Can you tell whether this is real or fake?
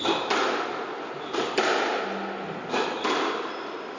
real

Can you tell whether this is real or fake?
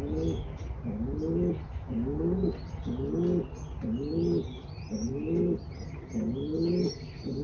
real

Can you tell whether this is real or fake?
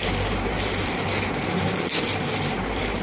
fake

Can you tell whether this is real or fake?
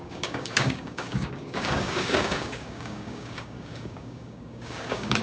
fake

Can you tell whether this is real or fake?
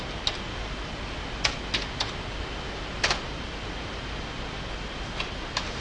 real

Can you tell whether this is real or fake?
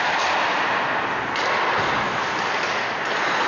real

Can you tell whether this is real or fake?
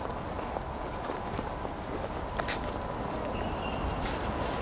real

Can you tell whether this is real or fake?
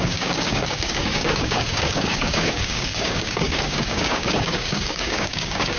fake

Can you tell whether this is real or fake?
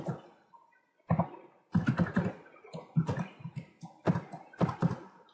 real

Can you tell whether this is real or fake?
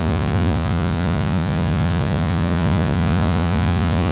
fake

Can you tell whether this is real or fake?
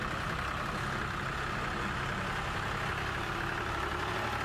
real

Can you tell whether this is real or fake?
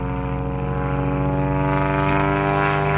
real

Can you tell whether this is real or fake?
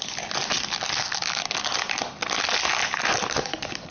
real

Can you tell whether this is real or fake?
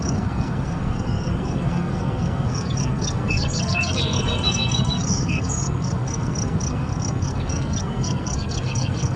fake